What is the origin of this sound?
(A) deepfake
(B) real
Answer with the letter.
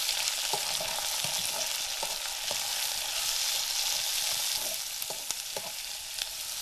B